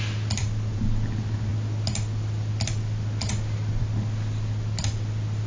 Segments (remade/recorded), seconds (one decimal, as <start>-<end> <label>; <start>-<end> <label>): 0.0-5.5 recorded